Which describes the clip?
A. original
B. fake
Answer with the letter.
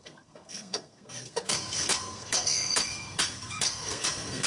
B